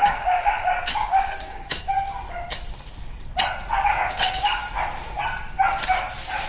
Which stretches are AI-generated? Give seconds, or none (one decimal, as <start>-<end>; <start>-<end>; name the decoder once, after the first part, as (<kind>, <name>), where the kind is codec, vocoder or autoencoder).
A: 0.0-1.9 (codec, DAC); 4.1-4.6